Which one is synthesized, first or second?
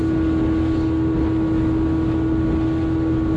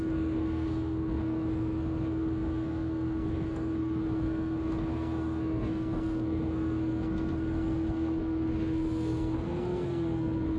second